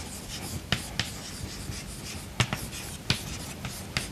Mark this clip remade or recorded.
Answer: recorded